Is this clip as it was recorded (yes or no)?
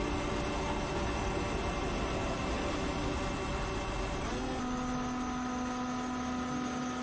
yes